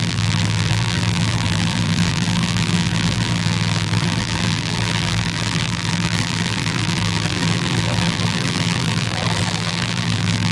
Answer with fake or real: fake